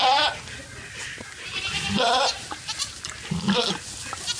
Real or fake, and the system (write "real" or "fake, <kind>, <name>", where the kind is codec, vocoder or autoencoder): real